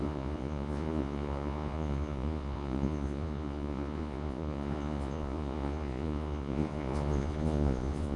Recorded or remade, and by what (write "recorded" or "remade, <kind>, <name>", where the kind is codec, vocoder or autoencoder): remade, vocoder, Vocos